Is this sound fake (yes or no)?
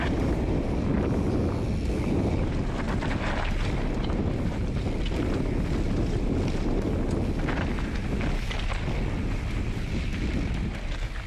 no